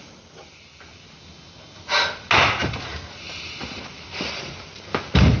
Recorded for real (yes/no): yes